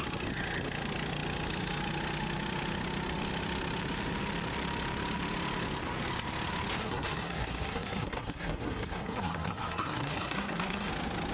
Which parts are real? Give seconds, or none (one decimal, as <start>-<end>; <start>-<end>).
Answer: 0.0-6.8; 10.9-11.3